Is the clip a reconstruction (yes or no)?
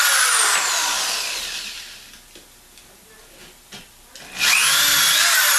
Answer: no